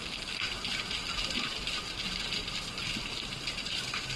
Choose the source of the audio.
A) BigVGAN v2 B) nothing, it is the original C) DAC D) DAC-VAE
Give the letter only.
B